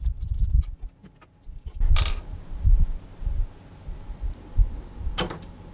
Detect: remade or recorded recorded